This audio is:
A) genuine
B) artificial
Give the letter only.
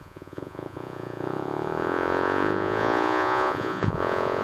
B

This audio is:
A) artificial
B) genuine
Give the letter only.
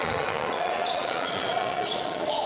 A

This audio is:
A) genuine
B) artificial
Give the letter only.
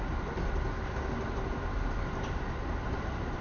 A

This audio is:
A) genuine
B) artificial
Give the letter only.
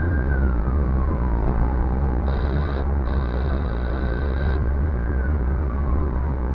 B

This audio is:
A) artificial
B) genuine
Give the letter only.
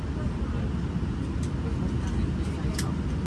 B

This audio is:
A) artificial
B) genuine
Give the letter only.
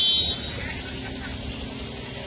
B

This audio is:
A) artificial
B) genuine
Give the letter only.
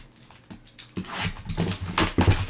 B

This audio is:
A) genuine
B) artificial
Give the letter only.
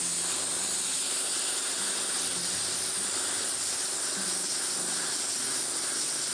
A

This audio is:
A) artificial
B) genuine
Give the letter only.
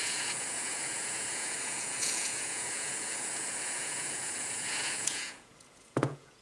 A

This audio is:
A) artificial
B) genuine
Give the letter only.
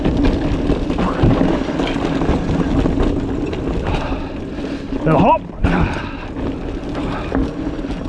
B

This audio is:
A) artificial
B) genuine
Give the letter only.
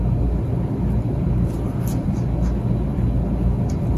B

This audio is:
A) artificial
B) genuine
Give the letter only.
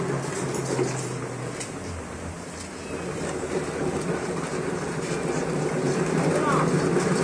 B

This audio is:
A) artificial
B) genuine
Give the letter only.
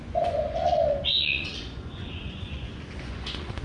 A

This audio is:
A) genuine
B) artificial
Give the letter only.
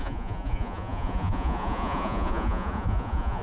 B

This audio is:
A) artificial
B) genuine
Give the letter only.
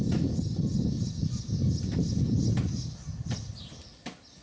B